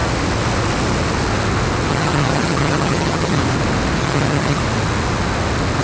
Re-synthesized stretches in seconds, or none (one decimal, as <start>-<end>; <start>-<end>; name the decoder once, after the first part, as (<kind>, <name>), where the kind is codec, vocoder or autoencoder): 1.9-3.4 (vocoder, HiFi-GAN); 4.0-4.6